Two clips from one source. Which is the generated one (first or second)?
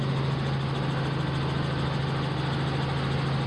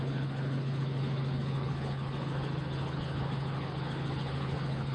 second